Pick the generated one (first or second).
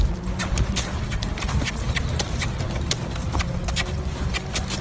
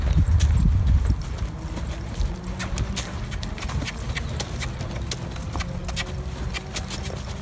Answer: first